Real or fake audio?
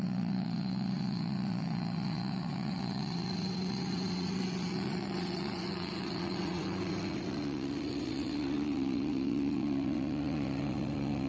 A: fake